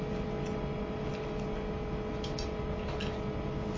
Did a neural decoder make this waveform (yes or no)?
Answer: no